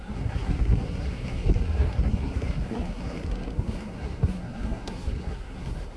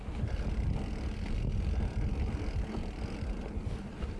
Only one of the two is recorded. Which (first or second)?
second